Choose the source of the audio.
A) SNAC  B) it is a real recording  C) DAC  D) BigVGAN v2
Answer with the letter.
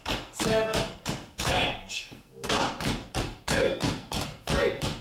A